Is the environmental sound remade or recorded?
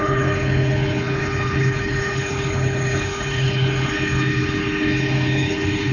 remade